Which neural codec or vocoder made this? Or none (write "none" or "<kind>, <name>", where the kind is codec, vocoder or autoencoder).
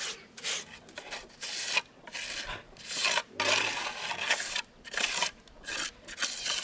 none